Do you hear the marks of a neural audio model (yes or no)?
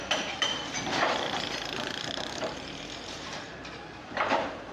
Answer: yes